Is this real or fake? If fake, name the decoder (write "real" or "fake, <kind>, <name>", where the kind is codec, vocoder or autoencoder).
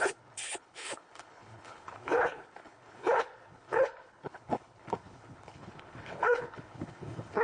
fake, codec, HILCodec